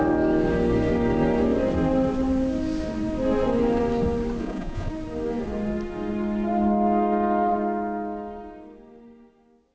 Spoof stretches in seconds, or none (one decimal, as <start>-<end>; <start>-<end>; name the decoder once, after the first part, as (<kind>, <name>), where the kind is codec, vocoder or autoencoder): 4.4-4.9 (vocoder, Vocos)